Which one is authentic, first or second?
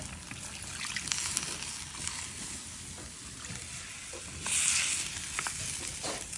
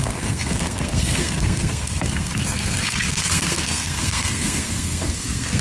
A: first